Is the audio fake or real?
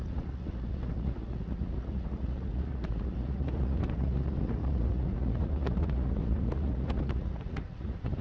fake